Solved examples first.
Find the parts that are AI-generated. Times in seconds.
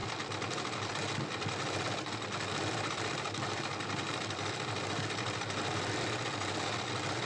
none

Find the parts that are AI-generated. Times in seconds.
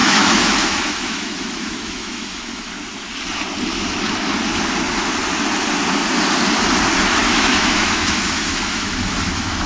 0.0-2.7 (autoencoder, DAC-VAE); 7.2-9.7